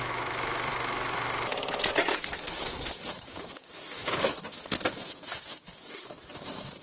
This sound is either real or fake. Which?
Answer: fake